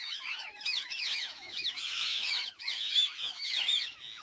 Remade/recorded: remade